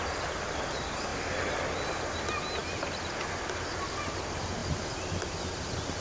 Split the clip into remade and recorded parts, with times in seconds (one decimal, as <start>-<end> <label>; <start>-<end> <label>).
0.0-6.0 recorded

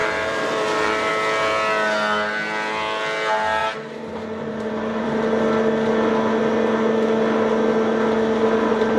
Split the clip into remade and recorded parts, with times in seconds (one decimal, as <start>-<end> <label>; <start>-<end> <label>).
0.0-1.1 remade; 1.1-3.6 recorded; 3.6-5.3 remade; 5.3-9.0 recorded

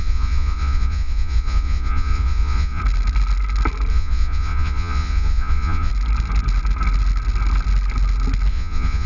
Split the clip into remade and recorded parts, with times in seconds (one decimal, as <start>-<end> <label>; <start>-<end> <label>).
0.0-2.8 remade; 2.8-3.9 recorded; 3.9-5.9 remade; 5.9-8.5 recorded; 8.5-9.1 remade

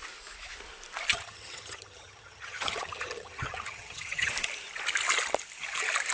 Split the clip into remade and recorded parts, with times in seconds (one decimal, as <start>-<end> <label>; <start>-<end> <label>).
0.0-1.1 recorded; 1.1-4.3 remade; 4.3-6.1 recorded